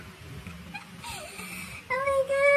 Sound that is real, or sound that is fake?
real